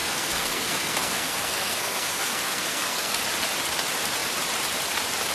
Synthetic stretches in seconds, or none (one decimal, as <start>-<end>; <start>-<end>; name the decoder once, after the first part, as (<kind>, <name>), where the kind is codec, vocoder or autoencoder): 0.0-3.2 (codec, SNAC)